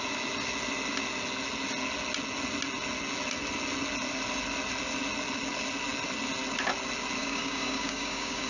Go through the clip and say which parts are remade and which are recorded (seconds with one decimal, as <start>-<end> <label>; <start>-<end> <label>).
0.0-7.2 recorded; 7.2-8.5 remade